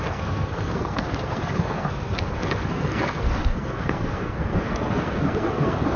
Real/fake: fake